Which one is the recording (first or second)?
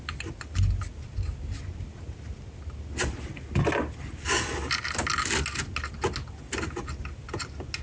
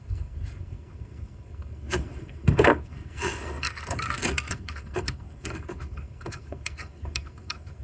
first